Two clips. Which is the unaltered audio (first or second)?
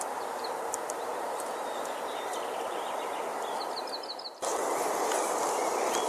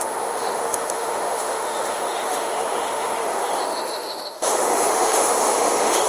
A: first